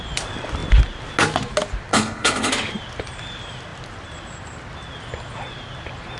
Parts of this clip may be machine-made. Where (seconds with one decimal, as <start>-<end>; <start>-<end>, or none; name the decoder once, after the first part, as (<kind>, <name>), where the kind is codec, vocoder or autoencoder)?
1.9-2.5 (codec, HILCodec)